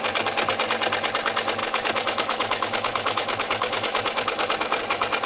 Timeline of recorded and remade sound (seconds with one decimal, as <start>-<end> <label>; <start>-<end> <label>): 0.0-1.6 recorded; 1.6-4.8 remade; 4.8-5.3 recorded